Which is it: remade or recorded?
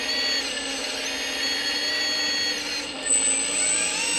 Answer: recorded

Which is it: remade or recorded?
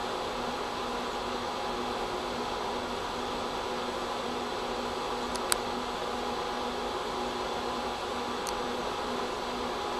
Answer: recorded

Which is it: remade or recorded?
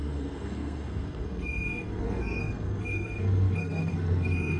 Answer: remade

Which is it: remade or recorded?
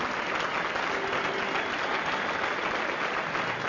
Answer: recorded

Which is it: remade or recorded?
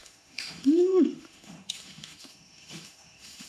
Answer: remade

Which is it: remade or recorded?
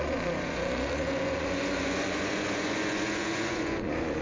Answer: remade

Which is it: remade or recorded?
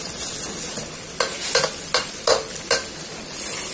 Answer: recorded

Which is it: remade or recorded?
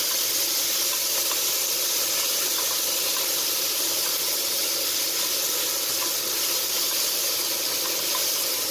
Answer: recorded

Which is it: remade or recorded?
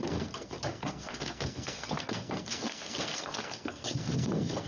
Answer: remade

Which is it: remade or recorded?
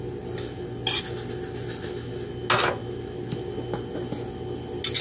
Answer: recorded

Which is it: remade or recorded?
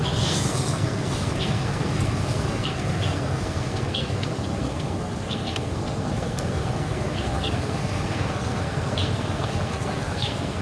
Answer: remade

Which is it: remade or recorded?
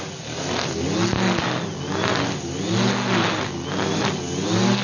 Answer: recorded